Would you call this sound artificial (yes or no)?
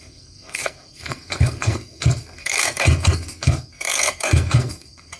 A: yes